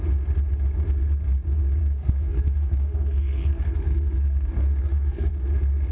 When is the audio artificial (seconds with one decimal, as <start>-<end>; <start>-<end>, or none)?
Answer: 1.8-5.3